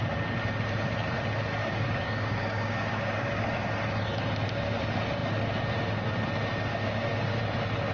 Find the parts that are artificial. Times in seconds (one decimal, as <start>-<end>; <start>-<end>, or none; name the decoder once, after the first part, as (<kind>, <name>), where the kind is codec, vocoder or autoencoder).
1.6-3.4 (codec, DAC); 6.7-7.4